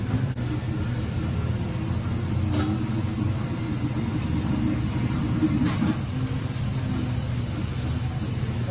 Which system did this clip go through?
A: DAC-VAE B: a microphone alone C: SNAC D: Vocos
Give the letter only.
B